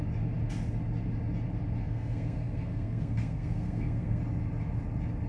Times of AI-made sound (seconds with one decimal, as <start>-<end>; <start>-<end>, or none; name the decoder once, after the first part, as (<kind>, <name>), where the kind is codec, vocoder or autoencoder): 1.8-4.2 (codec, SNAC)